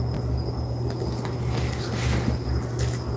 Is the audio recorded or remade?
recorded